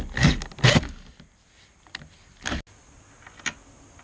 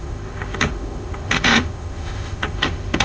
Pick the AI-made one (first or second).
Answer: second